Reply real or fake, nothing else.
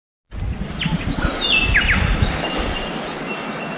real